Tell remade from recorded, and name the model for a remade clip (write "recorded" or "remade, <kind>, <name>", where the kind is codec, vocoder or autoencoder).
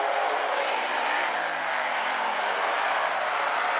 recorded